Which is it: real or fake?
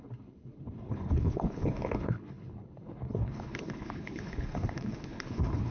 fake